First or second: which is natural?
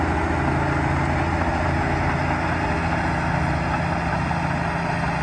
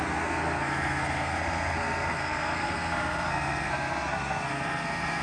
first